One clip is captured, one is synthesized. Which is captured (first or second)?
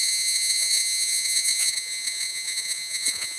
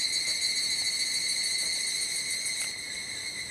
second